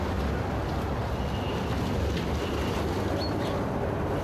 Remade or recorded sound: recorded